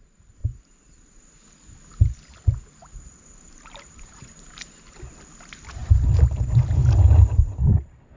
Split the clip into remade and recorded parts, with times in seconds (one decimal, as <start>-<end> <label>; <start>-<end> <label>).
0.0-0.4 recorded; 0.4-1.2 remade; 1.2-2.8 recorded; 2.8-4.8 remade; 4.8-8.2 recorded

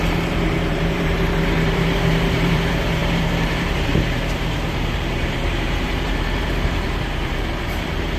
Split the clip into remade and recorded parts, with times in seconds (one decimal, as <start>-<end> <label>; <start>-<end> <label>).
0.0-8.2 remade

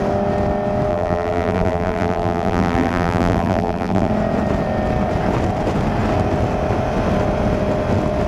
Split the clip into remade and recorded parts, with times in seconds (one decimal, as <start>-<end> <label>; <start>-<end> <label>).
0.0-0.9 recorded; 0.9-4.1 remade; 4.1-8.3 recorded

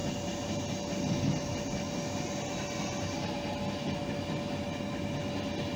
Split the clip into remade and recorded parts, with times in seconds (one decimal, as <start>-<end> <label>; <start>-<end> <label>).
0.0-5.8 recorded

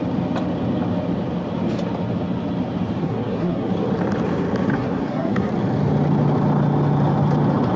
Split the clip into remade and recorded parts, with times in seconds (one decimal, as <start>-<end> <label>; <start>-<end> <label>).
0.0-3.0 recorded; 3.0-3.7 remade; 3.7-4.7 recorded; 4.7-5.5 remade; 5.5-7.8 recorded

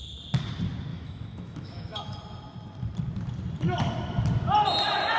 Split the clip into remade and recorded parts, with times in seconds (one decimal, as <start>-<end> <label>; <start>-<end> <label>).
0.0-0.9 recorded; 0.9-2.2 remade; 2.2-5.2 recorded

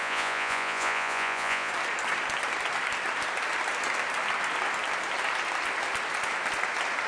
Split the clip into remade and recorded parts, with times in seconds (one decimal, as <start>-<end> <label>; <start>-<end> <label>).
0.0-1.7 remade; 1.7-7.1 recorded